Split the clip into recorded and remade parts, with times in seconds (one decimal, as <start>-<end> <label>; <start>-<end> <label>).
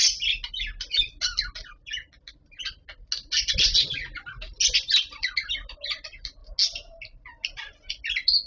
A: 0.0-8.5 recorded